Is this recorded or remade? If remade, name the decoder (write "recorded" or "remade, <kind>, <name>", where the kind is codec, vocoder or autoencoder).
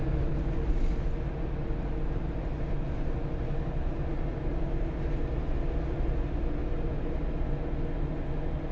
recorded